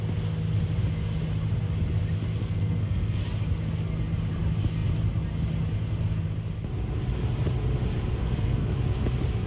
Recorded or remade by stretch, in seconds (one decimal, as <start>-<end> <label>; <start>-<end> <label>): 0.0-2.4 recorded; 2.4-3.2 remade; 3.2-8.2 recorded; 8.2-8.8 remade; 8.8-9.5 recorded